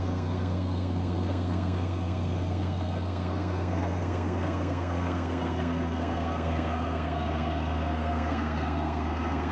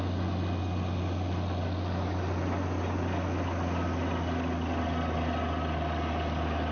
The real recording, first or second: second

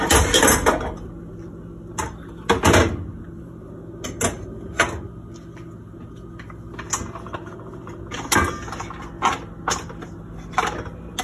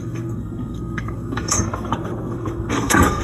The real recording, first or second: first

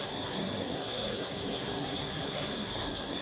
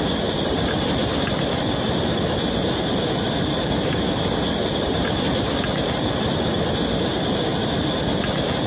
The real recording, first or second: second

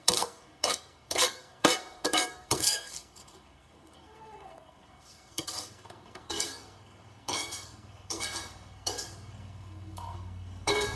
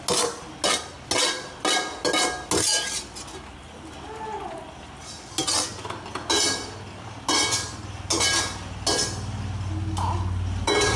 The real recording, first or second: second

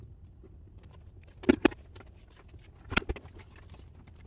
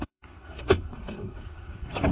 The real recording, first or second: first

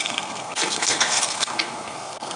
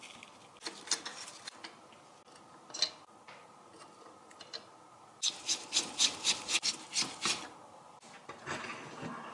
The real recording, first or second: second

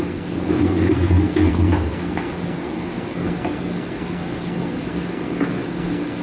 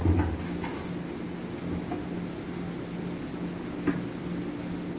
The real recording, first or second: second